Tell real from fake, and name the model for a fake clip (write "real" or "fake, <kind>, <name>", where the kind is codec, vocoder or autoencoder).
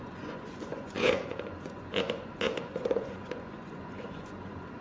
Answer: fake, vocoder, Vocos